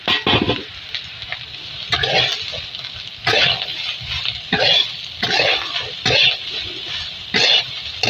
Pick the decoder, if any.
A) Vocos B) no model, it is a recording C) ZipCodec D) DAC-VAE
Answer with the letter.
B